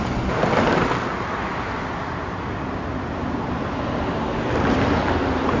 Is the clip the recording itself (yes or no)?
yes